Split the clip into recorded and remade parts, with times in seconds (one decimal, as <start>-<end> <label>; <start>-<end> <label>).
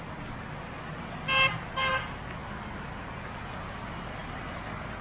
0.0-5.0 recorded